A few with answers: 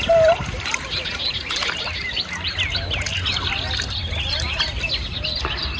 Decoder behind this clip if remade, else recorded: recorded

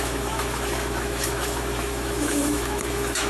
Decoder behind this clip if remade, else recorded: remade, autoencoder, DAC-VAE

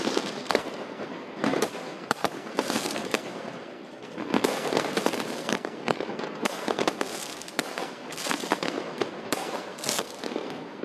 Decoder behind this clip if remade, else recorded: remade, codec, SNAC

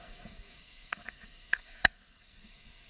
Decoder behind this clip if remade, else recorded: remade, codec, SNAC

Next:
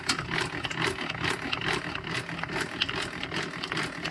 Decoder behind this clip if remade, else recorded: recorded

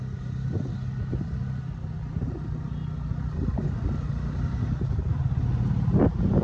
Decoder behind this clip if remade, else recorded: recorded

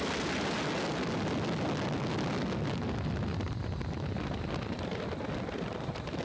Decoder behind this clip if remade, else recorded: recorded